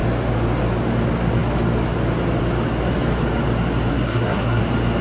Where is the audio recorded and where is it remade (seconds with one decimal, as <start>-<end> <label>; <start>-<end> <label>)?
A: 0.0-3.9 recorded; 3.9-4.6 remade; 4.6-5.0 recorded